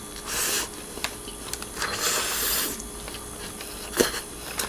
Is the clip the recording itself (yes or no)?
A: yes